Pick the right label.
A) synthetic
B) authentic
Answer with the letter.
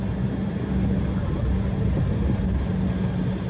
B